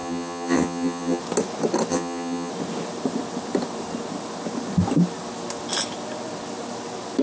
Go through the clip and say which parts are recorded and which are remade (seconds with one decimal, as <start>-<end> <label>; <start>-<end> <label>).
0.0-1.2 remade; 1.2-1.9 recorded; 1.9-2.5 remade; 2.5-7.2 recorded